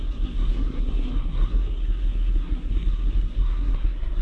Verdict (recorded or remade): remade